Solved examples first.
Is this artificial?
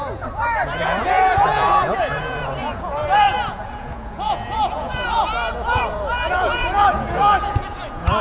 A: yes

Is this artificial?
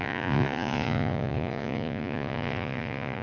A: yes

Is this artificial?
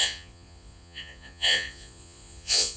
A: yes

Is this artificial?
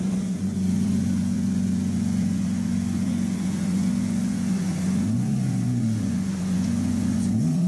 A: yes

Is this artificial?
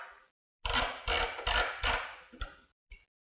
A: no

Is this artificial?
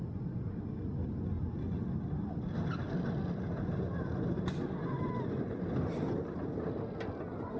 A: no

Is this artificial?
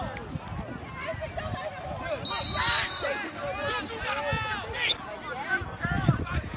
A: no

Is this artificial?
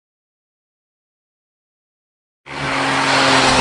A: no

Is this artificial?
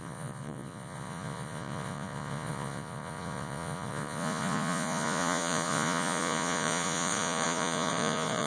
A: yes